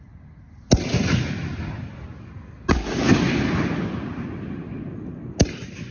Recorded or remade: recorded